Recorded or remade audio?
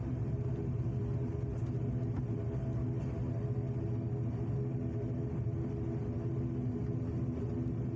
recorded